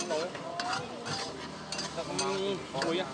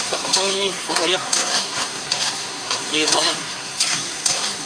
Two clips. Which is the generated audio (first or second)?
second